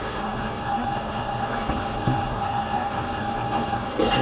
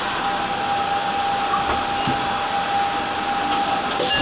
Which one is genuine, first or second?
second